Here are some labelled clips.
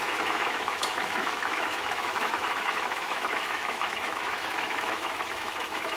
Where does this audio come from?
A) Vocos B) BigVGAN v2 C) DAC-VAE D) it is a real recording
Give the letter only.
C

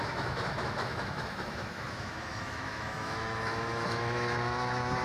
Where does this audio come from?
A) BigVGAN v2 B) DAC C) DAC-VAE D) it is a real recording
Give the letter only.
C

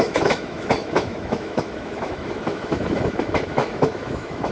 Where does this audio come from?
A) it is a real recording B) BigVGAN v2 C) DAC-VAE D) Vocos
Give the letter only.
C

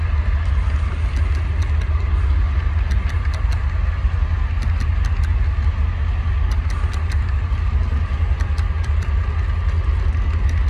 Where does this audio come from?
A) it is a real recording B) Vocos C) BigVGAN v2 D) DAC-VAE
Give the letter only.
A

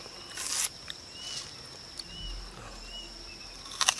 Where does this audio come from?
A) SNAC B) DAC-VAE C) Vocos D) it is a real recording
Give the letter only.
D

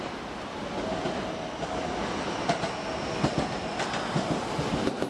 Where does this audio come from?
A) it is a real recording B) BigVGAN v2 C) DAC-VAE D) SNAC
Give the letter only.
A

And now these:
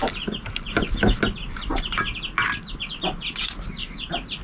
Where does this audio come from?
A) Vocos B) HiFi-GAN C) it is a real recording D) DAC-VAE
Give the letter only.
C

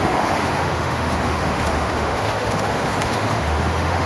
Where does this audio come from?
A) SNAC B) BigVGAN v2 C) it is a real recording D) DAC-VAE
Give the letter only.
D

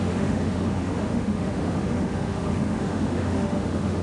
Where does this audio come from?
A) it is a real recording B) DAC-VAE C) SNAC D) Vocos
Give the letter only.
B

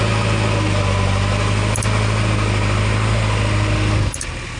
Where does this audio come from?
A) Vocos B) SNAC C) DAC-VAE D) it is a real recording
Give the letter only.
D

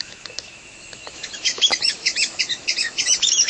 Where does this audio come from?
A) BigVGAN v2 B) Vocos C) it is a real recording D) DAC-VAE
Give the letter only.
D